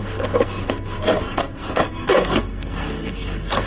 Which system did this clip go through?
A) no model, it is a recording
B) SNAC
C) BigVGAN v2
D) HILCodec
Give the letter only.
B